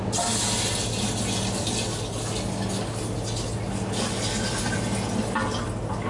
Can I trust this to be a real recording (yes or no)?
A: yes